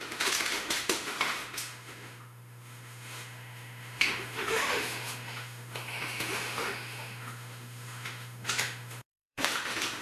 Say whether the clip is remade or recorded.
remade